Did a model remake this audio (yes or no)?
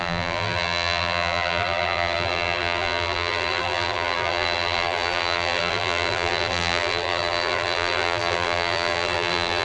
yes